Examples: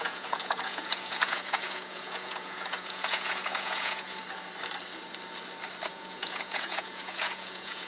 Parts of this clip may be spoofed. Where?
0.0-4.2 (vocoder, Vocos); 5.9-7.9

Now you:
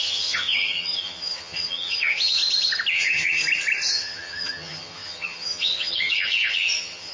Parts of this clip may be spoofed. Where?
0.0-2.4 (vocoder, HiFi-GAN); 2.9-3.4; 3.9-7.1

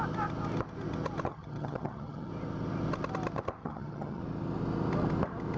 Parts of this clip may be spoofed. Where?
1.3-2.3 (vocoder, HiFi-GAN); 3.6-4.2

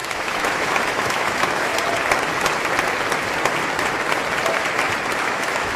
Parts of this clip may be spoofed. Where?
0.0-1.7 (autoencoder, DAC-VAE); 5.2-5.8

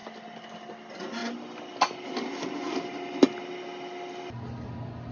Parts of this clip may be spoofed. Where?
none

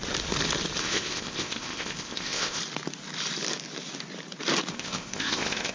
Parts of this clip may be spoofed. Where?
0.8-2.6 (codec, ZipCodec); 4.7-5.7

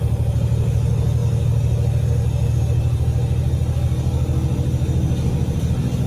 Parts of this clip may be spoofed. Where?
none

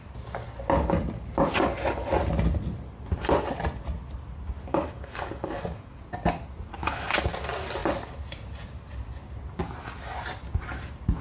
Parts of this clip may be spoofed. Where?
4.7-6.0 (codec, DAC); 6.7-7.2